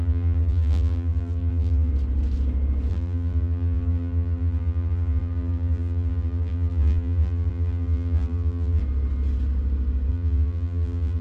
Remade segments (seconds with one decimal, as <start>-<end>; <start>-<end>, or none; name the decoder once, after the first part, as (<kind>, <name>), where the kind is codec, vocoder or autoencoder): 0.0-1.9 (vocoder, BigVGAN v2); 2.9-8.8; 10.1-11.2